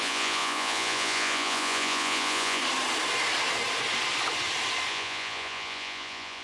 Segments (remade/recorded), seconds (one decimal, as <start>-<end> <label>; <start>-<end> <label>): 0.0-2.6 remade; 2.6-4.9 recorded; 4.9-6.4 remade